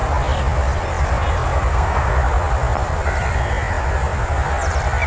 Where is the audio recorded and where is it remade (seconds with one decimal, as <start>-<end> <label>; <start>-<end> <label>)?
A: 0.0-1.7 recorded; 1.7-2.1 remade; 2.1-5.1 recorded